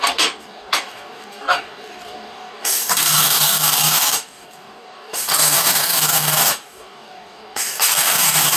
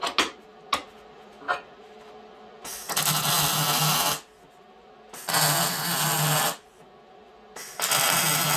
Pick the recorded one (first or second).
second